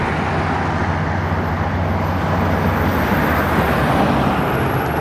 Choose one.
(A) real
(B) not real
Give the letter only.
A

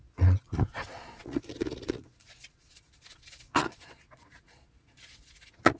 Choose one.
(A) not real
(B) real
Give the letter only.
A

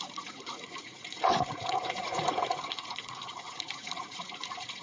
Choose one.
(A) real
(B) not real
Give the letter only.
B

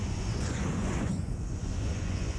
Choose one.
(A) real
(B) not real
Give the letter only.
B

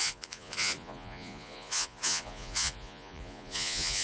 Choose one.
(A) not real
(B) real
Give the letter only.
A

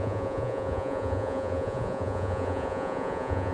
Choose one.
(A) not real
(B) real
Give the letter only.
A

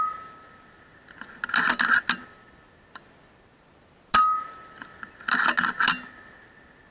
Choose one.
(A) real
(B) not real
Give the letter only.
A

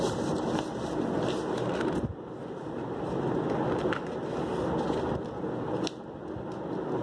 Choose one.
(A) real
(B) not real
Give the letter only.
A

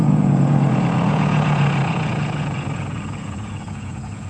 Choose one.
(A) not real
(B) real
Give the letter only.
A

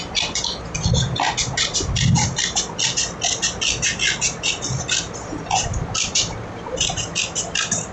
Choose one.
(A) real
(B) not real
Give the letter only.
A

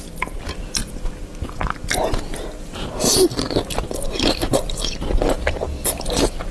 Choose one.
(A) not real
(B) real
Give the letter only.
B